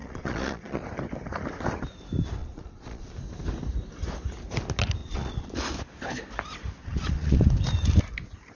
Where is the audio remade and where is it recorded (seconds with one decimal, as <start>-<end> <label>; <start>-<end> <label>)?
0.0-0.8 remade; 0.8-2.4 recorded; 2.4-3.1 remade; 3.1-5.0 recorded; 5.0-5.5 remade; 5.5-6.8 recorded; 6.8-7.4 remade; 7.4-8.5 recorded